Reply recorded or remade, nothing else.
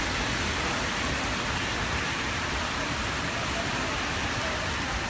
recorded